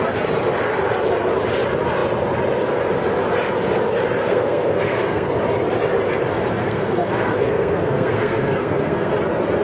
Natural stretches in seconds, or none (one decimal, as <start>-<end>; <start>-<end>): 0.0-4.2; 5.3-6.6; 9.1-9.6